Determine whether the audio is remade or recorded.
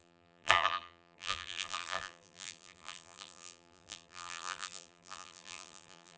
remade